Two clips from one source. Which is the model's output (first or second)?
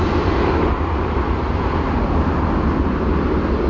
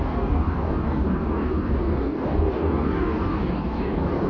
second